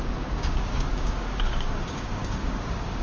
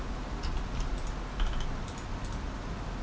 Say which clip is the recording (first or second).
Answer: second